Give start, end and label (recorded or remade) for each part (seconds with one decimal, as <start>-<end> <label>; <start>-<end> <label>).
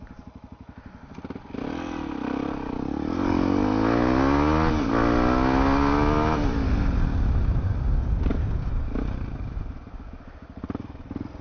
0.0-11.4 recorded